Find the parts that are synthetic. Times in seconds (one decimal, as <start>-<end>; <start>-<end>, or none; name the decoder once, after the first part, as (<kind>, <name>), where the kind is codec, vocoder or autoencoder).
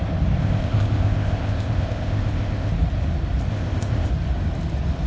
0.4-2.7 (codec, ZipCodec); 3.5-4.1